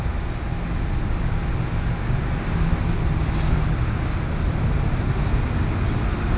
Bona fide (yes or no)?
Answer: yes